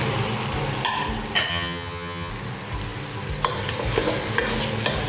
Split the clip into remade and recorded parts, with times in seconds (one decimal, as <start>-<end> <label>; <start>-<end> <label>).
0.0-1.5 recorded; 1.5-2.3 remade; 2.3-5.1 recorded